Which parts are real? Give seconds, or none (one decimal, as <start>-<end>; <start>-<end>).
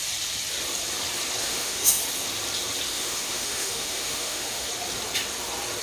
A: 0.0-1.4; 2.0-2.9; 4.7-5.8